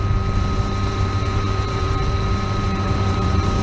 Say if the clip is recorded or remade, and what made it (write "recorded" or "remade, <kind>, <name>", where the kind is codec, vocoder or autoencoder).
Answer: remade, vocoder, BigVGAN v2